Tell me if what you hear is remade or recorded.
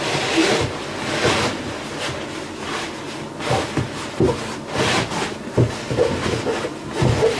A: recorded